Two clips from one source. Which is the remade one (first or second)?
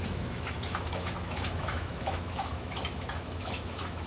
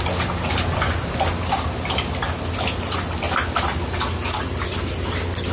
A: first